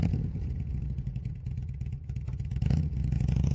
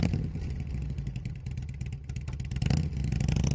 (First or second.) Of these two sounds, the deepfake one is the first